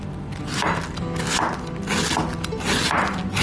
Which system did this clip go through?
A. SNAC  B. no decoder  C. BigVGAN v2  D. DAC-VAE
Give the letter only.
B